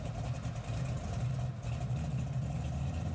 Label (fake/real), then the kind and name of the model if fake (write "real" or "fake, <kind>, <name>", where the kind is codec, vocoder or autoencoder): real